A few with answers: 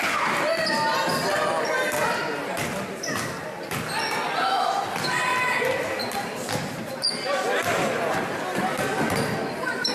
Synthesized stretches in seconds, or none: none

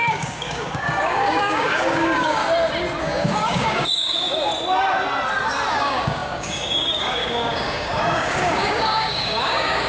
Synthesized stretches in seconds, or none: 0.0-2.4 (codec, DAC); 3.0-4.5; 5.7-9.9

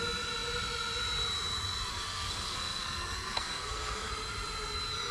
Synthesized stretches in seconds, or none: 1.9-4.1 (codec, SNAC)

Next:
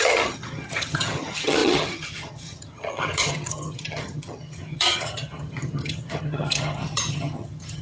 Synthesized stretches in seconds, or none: 0.0-7.8 (vocoder, HiFi-GAN)

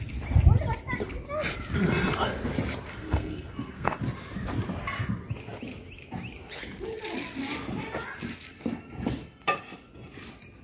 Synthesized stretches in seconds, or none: 2.9-4.0 (codec, SNAC)

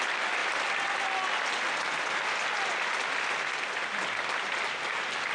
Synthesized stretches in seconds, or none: none